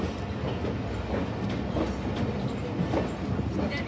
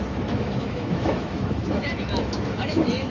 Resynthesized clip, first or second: second